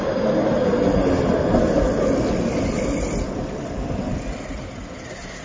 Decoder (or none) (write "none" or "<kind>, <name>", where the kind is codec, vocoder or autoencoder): none